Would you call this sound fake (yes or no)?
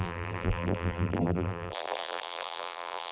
yes